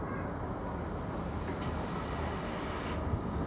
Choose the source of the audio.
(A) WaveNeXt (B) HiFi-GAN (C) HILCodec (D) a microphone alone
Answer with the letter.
D